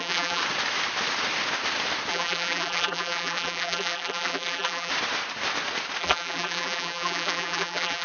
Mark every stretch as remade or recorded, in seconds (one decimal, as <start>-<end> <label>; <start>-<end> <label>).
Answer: 0.0-0.4 remade; 0.4-2.1 recorded; 2.1-4.9 remade; 4.9-6.0 recorded; 6.0-8.0 remade